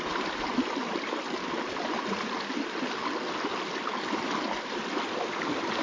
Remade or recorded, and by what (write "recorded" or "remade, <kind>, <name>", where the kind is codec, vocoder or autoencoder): recorded